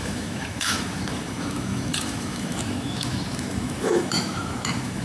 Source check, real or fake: fake